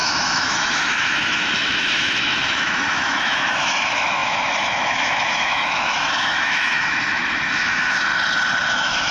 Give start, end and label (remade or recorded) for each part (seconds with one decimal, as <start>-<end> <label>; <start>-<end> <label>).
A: 0.0-8.1 remade; 8.1-8.7 recorded; 8.7-9.1 remade